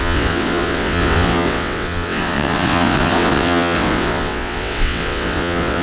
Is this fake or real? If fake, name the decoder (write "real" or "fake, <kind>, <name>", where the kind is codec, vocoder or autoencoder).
fake, vocoder, WaveNeXt